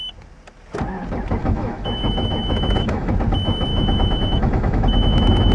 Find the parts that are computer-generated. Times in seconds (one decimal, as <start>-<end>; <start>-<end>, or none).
1.4-3.1; 3.7-5.5